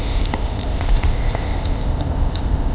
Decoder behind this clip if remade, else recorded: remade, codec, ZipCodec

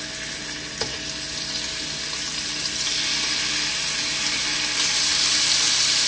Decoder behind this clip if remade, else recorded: recorded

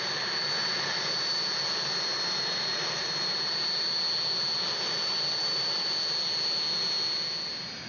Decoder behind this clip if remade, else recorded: recorded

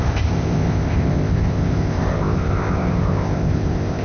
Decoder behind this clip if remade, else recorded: remade, codec, ZipCodec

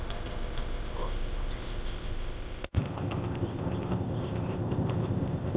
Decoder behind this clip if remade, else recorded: remade, codec, ZipCodec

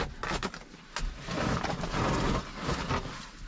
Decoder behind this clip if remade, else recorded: recorded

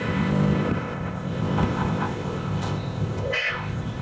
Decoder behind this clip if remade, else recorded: remade, codec, ZipCodec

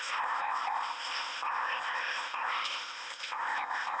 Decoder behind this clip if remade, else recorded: remade, codec, ZipCodec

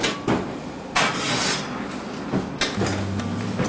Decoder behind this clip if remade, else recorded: recorded